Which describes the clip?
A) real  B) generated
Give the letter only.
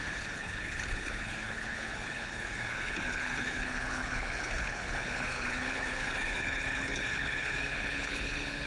B